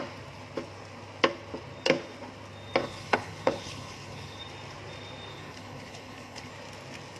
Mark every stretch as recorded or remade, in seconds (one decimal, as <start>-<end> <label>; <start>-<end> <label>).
0.0-2.8 recorded; 2.8-4.4 remade; 4.4-5.3 recorded; 5.3-6.5 remade; 6.5-7.2 recorded

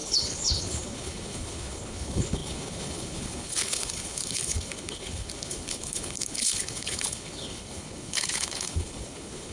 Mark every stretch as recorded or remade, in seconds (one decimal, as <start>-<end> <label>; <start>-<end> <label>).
0.0-9.5 remade